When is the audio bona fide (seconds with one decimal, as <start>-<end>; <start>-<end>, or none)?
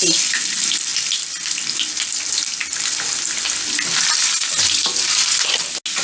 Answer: 0.0-6.0